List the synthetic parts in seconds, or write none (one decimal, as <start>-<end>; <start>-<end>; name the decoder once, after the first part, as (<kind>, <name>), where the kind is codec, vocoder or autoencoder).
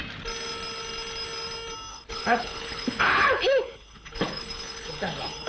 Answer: 1.9-5.5 (codec, HILCodec)